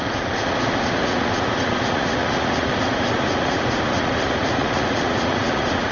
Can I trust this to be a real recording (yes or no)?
no